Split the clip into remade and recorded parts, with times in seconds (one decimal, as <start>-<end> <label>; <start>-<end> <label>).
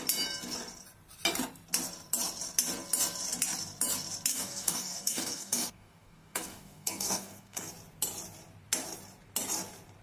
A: 0.0-4.3 recorded; 4.3-7.7 remade; 7.7-10.0 recorded